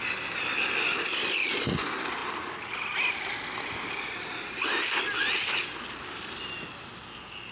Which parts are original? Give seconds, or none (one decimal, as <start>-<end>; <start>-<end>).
0.0-7.5